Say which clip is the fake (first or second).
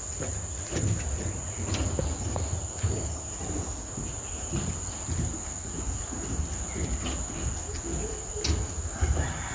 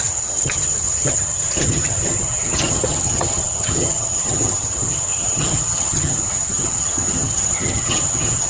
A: second